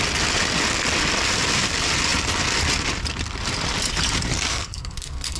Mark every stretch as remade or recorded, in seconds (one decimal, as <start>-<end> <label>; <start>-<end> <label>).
0.0-4.5 recorded; 4.5-5.4 remade